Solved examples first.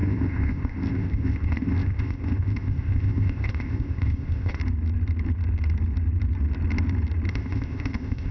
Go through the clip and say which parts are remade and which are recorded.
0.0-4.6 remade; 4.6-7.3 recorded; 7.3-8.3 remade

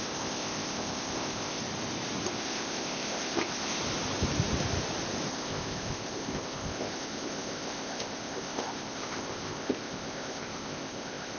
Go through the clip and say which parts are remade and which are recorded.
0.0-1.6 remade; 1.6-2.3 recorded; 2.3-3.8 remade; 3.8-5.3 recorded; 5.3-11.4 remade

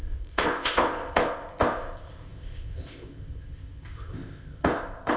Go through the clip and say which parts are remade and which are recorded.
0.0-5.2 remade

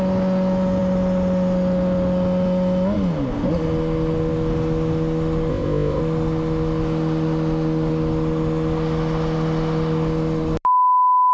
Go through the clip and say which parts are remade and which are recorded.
0.0-5.5 recorded; 5.5-6.0 remade; 6.0-11.3 recorded

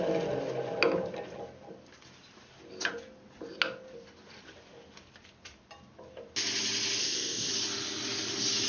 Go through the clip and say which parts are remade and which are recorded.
0.0-7.0 recorded; 7.0-7.5 remade; 7.5-8.7 recorded